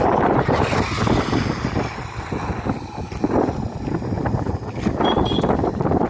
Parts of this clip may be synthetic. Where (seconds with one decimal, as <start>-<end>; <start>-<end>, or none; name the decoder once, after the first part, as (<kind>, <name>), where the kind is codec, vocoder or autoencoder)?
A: none